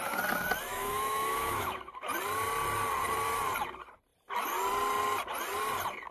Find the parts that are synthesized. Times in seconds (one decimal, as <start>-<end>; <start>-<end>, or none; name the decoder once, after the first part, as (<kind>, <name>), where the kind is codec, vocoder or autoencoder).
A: 0.7-1.9 (autoencoder, DAC-VAE)